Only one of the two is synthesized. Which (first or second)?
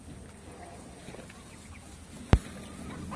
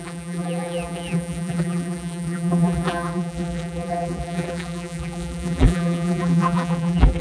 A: second